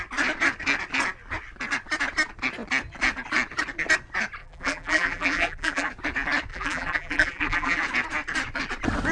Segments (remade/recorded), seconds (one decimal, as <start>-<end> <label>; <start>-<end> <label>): 0.0-4.4 recorded; 4.4-5.9 remade; 5.9-6.5 recorded; 6.5-7.8 remade; 7.8-9.1 recorded

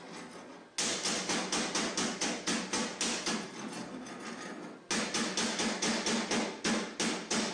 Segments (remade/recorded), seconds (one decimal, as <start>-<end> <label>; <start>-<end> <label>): 0.0-7.5 recorded